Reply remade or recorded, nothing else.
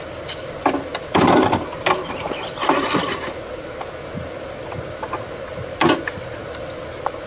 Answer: recorded